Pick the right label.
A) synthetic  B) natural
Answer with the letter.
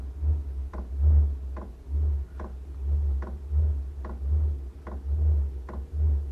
B